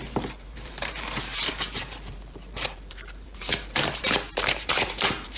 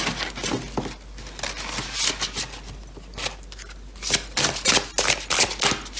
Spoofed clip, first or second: first